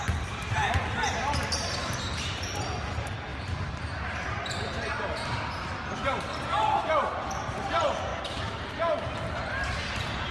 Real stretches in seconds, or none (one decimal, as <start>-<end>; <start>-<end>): 8.1-9.3